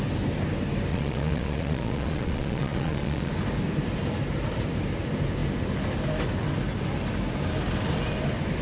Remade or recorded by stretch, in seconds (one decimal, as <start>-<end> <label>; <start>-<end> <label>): 0.0-0.9 recorded; 0.9-3.3 remade; 3.3-8.6 recorded